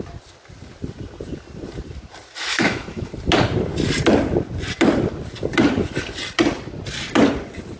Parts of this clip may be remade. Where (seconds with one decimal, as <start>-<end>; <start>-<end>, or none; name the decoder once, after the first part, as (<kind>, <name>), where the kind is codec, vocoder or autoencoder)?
2.5-3.1 (autoencoder, DAC-VAE)